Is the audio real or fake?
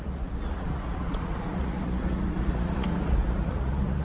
fake